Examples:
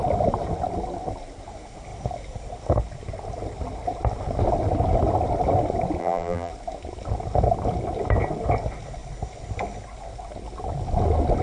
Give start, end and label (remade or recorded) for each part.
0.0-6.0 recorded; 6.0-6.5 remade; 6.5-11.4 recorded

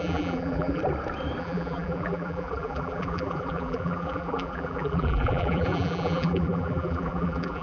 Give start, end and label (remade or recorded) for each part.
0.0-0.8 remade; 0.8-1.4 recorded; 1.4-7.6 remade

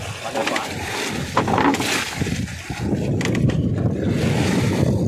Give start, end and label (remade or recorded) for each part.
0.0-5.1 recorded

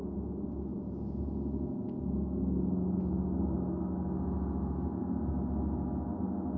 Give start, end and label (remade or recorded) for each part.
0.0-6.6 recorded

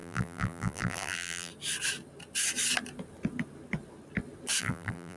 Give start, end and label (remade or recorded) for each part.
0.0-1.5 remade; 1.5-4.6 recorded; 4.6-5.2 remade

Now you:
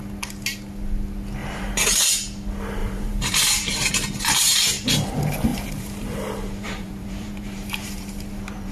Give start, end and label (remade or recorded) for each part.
0.0-1.4 recorded; 1.4-2.1 remade; 2.1-2.8 recorded; 2.8-3.9 remade; 3.9-5.5 recorded; 5.5-8.7 remade

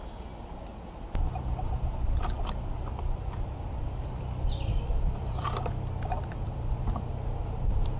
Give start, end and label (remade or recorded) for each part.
0.0-2.9 recorded; 2.9-7.1 remade; 7.1-8.0 recorded